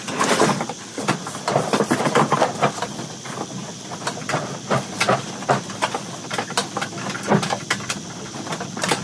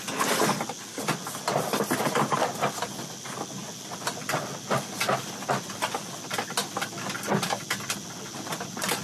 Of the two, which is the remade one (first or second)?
first